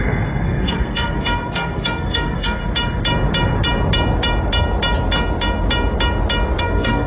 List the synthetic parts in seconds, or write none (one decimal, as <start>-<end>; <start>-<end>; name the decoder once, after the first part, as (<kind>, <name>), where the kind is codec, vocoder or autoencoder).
0.0-2.6 (codec, SNAC); 6.6-7.1